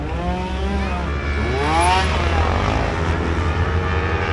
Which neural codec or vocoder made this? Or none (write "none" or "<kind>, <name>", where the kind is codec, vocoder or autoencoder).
none